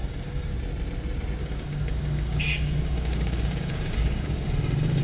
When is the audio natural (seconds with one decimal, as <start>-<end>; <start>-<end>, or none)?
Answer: 0.6-1.4; 4.4-5.0